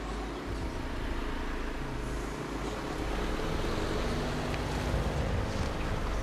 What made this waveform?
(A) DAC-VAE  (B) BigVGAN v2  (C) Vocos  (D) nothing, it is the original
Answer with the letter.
D